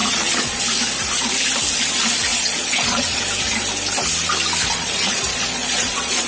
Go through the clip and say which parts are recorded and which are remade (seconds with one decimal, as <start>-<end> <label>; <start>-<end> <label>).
0.0-0.6 remade; 0.6-2.3 recorded; 2.3-3.2 remade; 3.2-4.6 recorded; 4.6-6.3 remade